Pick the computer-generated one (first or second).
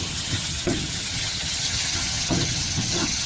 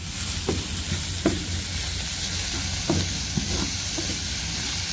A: first